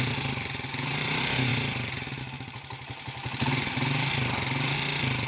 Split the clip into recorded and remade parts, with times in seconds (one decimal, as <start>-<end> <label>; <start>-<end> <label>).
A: 0.0-1.5 remade; 1.5-2.2 recorded; 2.2-5.3 remade